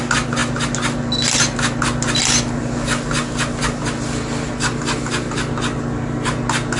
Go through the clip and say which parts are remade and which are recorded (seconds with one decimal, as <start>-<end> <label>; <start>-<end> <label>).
0.0-6.8 recorded